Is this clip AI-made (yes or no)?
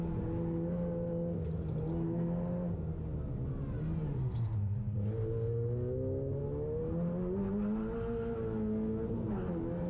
no